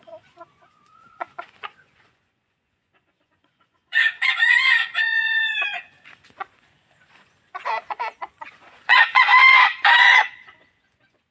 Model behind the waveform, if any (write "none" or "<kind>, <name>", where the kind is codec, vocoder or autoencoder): vocoder, Vocos